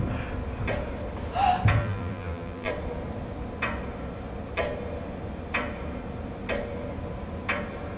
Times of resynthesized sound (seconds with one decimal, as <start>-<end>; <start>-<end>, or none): 1.8-2.7

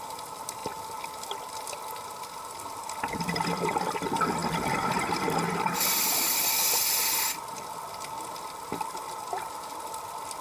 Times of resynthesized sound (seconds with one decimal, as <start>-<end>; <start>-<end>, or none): none

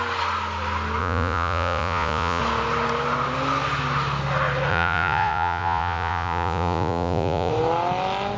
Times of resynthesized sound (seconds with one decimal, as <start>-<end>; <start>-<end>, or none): 1.0-2.4; 4.7-7.5